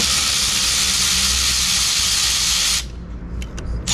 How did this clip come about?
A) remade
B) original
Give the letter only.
B